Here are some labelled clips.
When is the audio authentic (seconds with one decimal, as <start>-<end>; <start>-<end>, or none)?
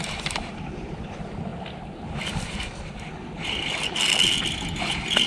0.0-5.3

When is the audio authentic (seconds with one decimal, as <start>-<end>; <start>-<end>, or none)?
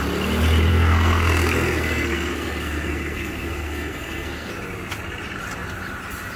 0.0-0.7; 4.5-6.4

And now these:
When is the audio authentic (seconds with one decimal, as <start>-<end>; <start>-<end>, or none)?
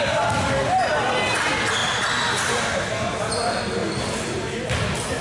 0.0-5.2